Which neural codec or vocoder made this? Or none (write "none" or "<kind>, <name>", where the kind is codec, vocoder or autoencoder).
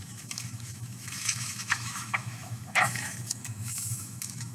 autoencoder, DAC-VAE